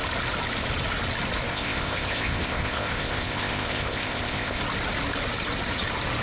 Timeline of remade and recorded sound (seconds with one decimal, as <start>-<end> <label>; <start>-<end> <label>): 0.0-1.5 recorded; 1.5-4.6 remade; 4.6-6.2 recorded